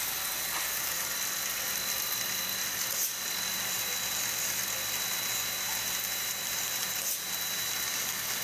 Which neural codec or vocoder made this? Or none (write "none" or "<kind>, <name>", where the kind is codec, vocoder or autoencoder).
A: none